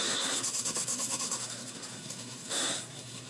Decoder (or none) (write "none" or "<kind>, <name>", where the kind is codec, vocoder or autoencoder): codec, SNAC